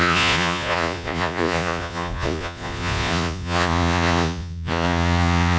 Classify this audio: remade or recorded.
remade